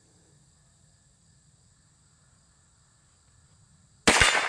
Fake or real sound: real